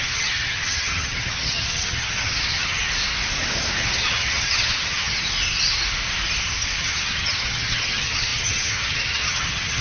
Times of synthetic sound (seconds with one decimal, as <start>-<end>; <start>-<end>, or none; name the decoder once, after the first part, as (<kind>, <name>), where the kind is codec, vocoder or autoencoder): 0.0-2.8 (vocoder, HiFi-GAN); 3.8-5.2; 6.8-9.8